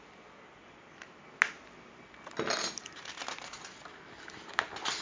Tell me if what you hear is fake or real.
real